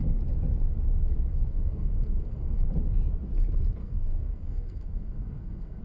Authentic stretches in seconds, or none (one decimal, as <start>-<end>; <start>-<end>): 0.0-1.3; 2.6-3.8